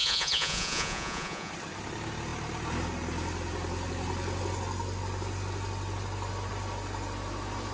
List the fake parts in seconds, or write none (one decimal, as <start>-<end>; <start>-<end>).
0.0-1.5